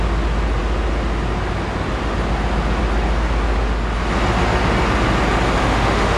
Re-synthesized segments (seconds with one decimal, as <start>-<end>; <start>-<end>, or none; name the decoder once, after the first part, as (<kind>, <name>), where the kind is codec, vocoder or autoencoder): 5.6-6.2 (autoencoder, DAC-VAE)